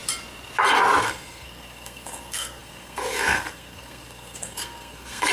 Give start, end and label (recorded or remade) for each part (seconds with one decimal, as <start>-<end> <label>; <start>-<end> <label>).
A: 0.0-1.0 recorded; 1.0-5.3 remade